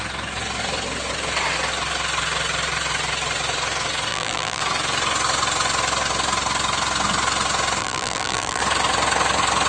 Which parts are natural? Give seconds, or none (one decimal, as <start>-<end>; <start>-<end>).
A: 0.0-4.1; 4.6-7.8; 8.6-9.7